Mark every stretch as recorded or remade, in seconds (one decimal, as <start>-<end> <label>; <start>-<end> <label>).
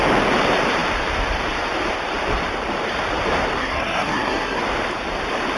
0.0-3.6 recorded; 3.6-4.6 remade; 4.6-5.6 recorded